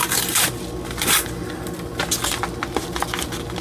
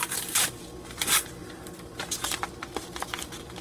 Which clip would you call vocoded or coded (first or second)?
second